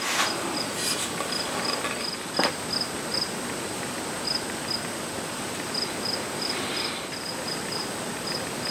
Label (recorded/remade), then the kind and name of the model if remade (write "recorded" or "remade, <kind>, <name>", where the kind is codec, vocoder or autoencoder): recorded